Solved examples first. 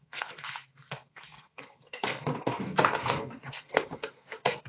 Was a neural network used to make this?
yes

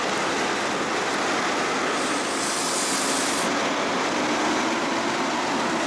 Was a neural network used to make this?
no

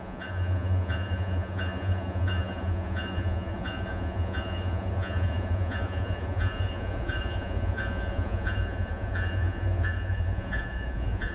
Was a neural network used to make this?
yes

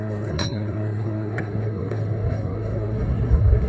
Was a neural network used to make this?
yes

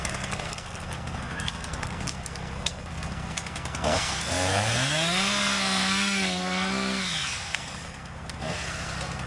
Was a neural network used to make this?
yes